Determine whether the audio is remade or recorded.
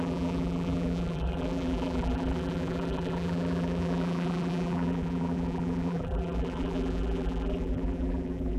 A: remade